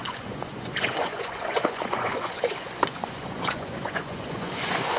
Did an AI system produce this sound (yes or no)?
yes